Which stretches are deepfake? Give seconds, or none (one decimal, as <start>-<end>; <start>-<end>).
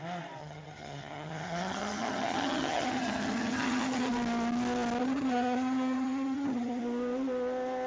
0.4-4.1; 5.0-6.8